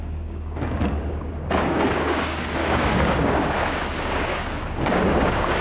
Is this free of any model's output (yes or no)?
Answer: no